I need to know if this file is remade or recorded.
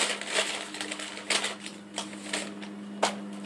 recorded